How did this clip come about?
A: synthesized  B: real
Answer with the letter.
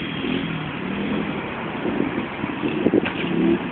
B